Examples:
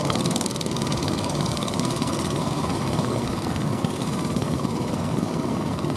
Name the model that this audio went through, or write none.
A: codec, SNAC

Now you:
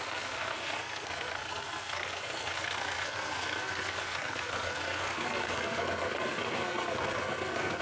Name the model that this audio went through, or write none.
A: codec, SNAC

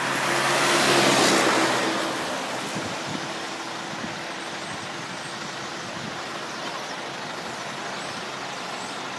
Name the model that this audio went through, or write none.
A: none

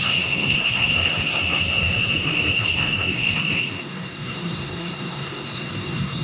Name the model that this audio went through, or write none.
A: codec, SNAC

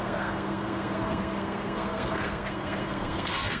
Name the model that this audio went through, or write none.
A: codec, SNAC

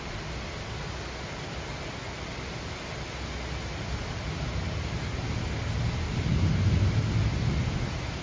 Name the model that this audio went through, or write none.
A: none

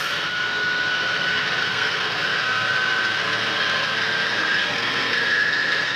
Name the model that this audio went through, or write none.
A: codec, SNAC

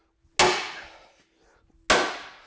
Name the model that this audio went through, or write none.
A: none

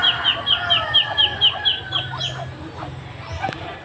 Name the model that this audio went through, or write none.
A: none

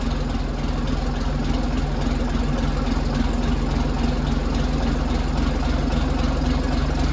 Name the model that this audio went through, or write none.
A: none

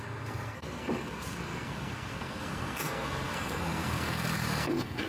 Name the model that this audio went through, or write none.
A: codec, SNAC